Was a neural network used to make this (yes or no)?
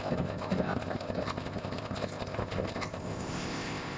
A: yes